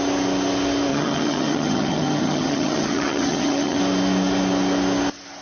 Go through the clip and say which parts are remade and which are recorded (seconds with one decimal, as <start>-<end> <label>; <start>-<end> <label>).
0.0-0.9 recorded; 0.9-3.8 remade; 3.8-5.4 recorded